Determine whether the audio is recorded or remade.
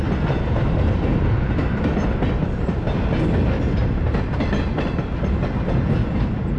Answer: recorded